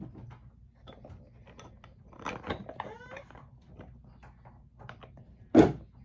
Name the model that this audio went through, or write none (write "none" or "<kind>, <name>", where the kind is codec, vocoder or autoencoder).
none